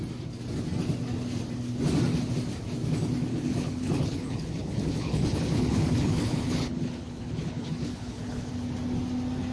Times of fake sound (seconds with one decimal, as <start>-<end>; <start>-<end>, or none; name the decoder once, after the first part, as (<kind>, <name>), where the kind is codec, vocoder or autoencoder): 3.3-8.5 (codec, HILCodec)